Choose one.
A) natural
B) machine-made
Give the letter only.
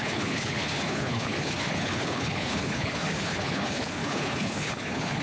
B